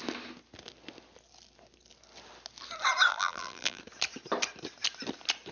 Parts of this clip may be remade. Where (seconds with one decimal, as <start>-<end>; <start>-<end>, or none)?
3.1-3.8